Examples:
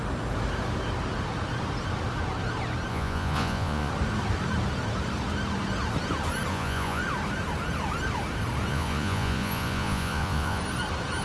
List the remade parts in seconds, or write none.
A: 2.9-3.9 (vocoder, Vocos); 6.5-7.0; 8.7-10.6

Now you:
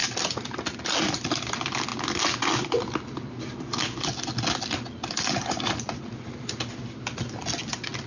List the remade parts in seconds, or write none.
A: none

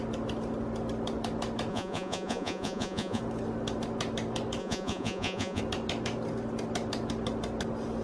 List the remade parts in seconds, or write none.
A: 1.7-3.2 (vocoder, Vocos); 4.6-5.6

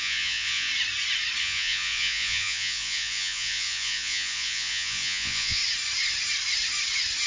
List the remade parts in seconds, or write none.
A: 0.0-0.7 (vocoder, Vocos); 1.4-5.6

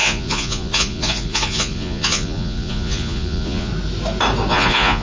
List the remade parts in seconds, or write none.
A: 0.0-3.7 (vocoder, Vocos); 4.5-5.0

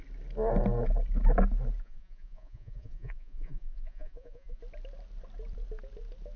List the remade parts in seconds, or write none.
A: 1.8-4.6 (vocoder, Vocos)